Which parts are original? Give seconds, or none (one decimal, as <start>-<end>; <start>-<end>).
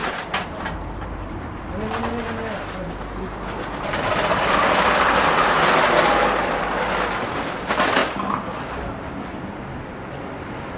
1.7-10.8